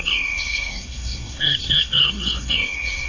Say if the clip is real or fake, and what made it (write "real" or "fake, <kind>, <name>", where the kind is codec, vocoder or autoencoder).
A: fake, codec, SNAC